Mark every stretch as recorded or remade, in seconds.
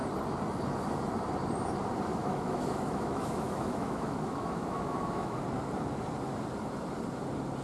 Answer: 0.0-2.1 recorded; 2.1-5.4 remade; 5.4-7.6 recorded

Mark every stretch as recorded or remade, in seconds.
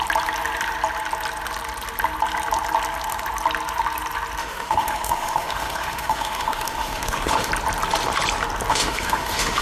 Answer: 0.0-4.4 recorded; 4.4-7.5 remade; 7.5-8.7 recorded; 8.7-9.6 remade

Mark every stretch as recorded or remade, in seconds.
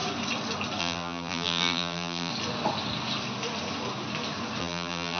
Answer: 0.0-0.8 recorded; 0.8-2.3 remade; 2.3-4.6 recorded; 4.6-5.2 remade